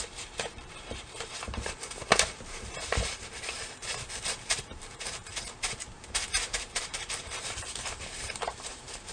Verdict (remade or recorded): remade